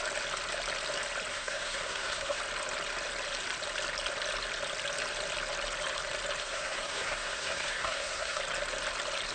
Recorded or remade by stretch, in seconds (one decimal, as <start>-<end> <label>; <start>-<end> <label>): 0.0-1.3 recorded; 1.3-2.4 remade; 2.4-6.4 recorded; 6.4-8.4 remade; 8.4-9.3 recorded